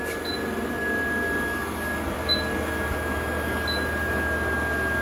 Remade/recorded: recorded